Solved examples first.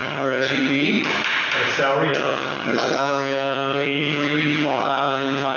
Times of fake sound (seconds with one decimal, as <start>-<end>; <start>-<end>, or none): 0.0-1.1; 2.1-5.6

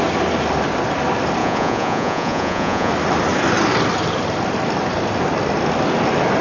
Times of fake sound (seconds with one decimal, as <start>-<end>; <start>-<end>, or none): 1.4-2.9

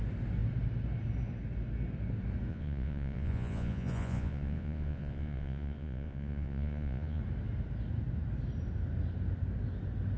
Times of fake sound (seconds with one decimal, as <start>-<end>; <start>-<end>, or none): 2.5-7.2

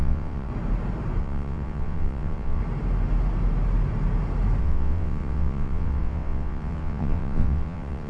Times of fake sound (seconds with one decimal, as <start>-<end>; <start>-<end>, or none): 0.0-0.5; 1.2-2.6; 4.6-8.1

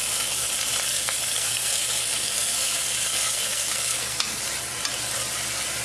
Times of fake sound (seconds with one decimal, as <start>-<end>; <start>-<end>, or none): 0.0-0.5; 0.9-4.4

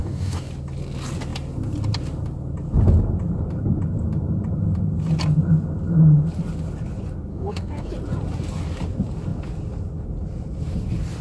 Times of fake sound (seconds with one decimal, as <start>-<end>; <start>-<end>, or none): 0.0-0.5; 7.3-7.9

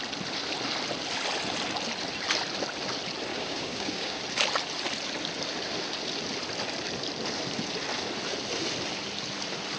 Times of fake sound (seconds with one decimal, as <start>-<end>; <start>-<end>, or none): 3.3-4.2

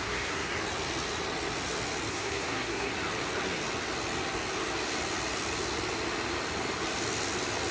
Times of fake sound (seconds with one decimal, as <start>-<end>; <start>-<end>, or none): 0.0-0.5; 2.1-2.9